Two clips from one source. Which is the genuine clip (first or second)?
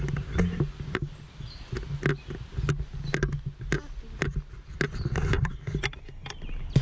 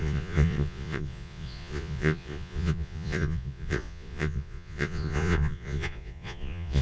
first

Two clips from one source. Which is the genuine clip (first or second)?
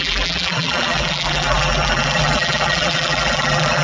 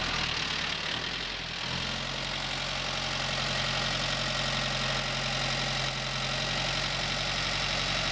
second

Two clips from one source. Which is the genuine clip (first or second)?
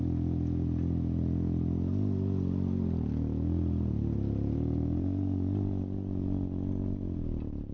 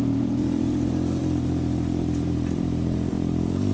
first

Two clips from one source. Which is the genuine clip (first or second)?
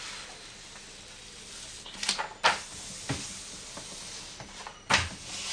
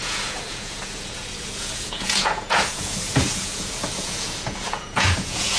first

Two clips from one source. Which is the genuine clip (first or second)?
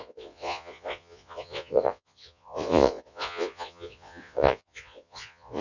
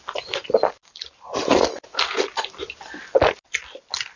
second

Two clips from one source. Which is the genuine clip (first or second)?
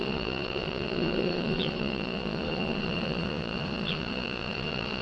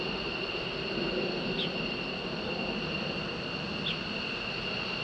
second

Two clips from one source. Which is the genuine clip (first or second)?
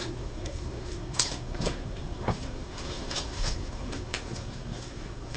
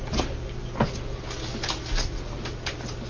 second